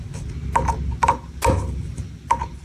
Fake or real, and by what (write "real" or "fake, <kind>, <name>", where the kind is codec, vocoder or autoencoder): real